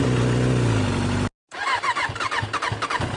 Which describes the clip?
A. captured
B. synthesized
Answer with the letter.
A